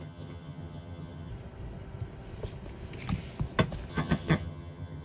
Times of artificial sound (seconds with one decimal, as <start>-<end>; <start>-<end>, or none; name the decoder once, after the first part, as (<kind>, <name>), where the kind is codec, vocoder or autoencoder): 0.0-1.3 (vocoder, HiFi-GAN); 3.9-5.0

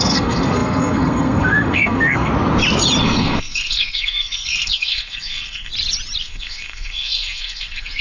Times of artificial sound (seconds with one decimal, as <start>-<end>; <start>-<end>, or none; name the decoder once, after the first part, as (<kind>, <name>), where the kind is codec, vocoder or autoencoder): 0.0-2.3 (codec, SNAC); 3.0-5.7; 6.2-8.0

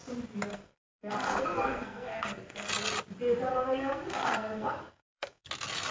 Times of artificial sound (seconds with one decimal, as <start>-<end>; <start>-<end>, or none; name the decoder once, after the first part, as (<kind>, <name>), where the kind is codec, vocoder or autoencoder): 0.5-2.7 (codec, SNAC); 3.5-5.5

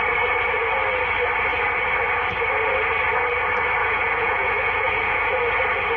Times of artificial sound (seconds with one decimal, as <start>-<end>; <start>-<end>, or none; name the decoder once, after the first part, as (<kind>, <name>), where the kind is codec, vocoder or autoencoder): 3.8-5.4 (vocoder, Vocos)

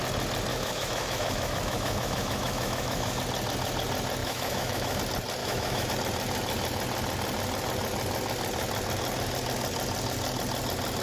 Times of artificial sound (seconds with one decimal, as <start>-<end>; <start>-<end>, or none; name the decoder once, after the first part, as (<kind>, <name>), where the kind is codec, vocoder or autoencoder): 0.5-3.2 (autoencoder, DAC-VAE); 4.2-5.0; 5.4-5.9

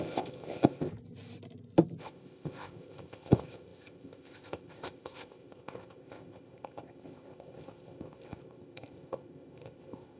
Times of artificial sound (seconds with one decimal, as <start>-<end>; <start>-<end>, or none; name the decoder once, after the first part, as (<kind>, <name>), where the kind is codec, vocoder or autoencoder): 0.0-0.9 (codec, ZipCodec); 2.0-10.2

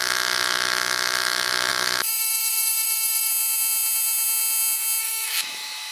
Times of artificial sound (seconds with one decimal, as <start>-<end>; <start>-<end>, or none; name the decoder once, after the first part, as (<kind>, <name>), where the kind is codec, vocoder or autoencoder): 0.0-3.3 (autoencoder, DAC-VAE); 5.0-5.9